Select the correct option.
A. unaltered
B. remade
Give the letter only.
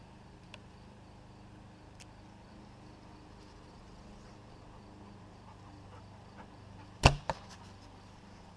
A